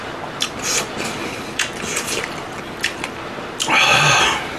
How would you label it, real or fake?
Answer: real